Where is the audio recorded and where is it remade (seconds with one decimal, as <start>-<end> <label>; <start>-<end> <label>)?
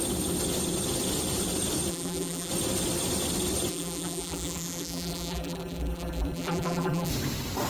0.0-1.9 recorded; 1.9-2.5 remade; 2.5-3.7 recorded; 3.7-7.1 remade; 7.1-7.7 recorded